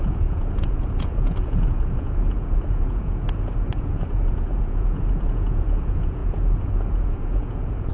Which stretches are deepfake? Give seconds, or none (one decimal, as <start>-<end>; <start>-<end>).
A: 0.0-7.9